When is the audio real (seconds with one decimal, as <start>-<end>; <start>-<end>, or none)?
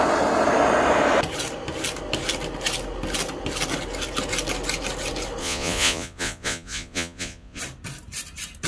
0.0-5.4; 7.6-8.7